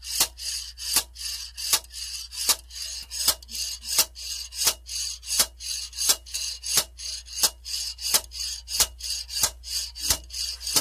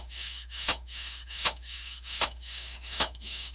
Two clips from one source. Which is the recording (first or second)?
first